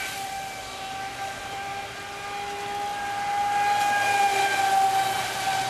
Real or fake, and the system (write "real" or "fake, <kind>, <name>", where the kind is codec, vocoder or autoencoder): real